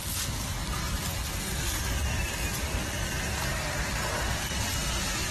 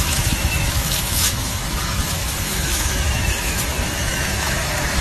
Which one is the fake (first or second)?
second